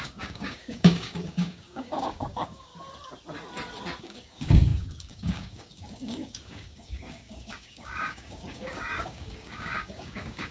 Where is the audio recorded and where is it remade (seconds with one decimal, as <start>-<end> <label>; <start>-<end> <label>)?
0.0-2.7 remade; 2.7-4.0 recorded; 4.0-10.5 remade